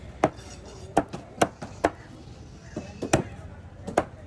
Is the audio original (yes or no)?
yes